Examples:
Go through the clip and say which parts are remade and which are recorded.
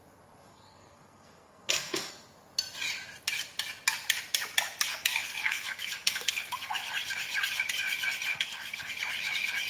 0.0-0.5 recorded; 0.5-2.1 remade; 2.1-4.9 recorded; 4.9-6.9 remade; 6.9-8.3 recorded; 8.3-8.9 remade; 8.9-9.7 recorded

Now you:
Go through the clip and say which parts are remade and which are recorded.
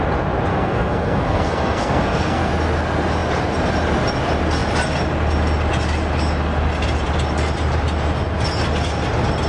0.0-0.5 recorded; 0.5-2.5 remade; 2.5-9.5 recorded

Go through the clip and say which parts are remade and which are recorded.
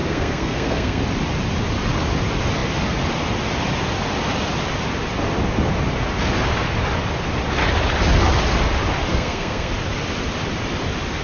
0.0-1.0 remade; 1.0-9.1 recorded; 9.1-9.7 remade; 9.7-11.2 recorded